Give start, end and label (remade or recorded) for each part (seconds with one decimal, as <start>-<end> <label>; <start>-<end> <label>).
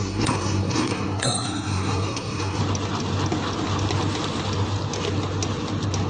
0.0-2.6 remade; 2.6-6.1 recorded